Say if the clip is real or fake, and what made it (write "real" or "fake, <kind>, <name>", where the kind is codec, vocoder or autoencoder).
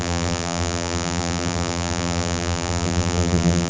fake, vocoder, BigVGAN v2